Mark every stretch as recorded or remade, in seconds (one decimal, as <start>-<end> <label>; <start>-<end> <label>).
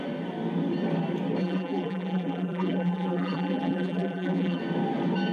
0.0-1.4 recorded; 1.4-4.6 remade; 4.6-5.3 recorded